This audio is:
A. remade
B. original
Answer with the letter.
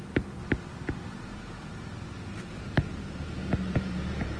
A